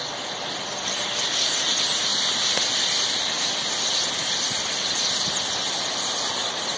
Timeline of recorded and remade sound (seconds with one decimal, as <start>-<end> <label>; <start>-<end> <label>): 0.0-2.1 recorded; 2.1-2.6 remade; 2.6-6.8 recorded

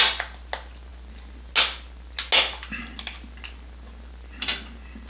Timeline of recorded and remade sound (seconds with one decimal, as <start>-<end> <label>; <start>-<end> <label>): 0.0-5.1 recorded

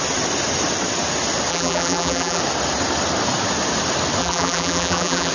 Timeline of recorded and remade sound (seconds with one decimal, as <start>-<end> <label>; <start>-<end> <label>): 0.0-1.5 recorded; 1.5-2.4 remade; 2.4-4.2 recorded; 4.2-5.3 remade

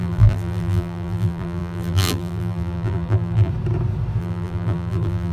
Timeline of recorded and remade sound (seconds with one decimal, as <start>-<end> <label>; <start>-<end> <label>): 0.0-3.5 remade; 3.5-4.2 recorded; 4.2-5.3 remade